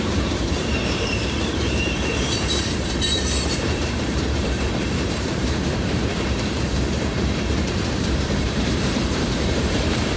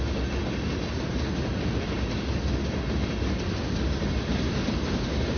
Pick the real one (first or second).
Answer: second